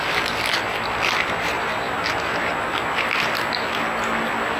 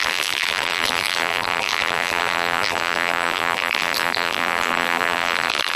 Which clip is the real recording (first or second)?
first